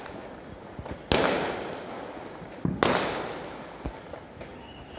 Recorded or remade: recorded